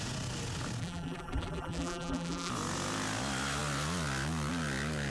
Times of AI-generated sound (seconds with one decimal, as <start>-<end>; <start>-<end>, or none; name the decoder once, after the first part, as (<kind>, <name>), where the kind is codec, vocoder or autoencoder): 0.8-2.5 (vocoder, BigVGAN v2)